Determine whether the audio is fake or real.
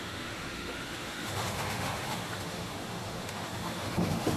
fake